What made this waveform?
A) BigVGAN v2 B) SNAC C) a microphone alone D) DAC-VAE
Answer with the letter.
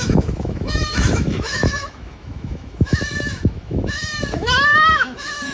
D